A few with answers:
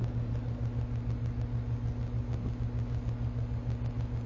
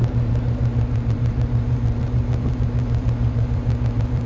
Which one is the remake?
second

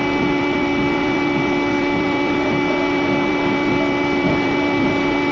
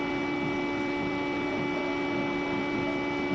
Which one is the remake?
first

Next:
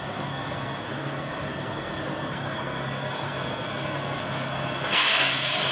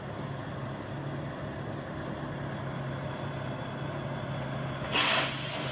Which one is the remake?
first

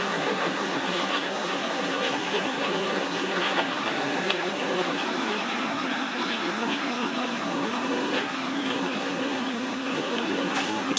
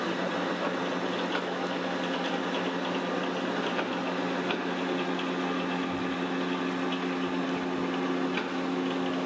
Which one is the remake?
first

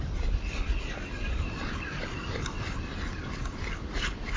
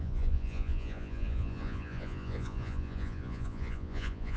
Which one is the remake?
second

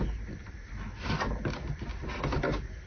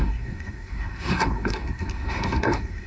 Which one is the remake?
second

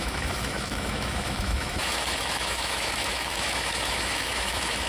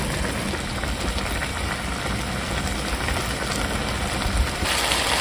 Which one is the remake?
first